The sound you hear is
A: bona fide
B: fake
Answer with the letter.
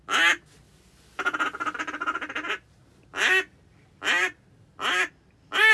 A